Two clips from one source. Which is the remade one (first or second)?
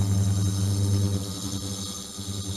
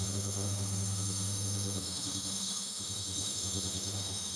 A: second